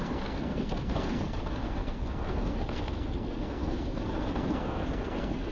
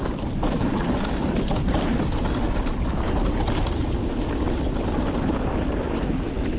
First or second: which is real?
second